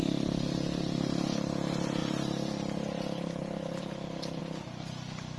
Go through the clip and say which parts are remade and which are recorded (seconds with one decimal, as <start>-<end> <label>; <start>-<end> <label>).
0.0-2.0 recorded; 2.0-3.8 remade; 3.8-5.4 recorded